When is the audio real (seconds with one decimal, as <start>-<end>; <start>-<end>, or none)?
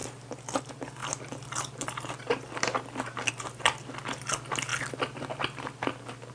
0.0-6.3